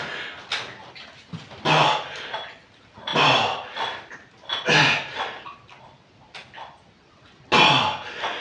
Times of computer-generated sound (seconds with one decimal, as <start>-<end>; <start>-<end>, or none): none